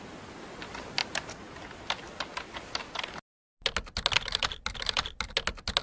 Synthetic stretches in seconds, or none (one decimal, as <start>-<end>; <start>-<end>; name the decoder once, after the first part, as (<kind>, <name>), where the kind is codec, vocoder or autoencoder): none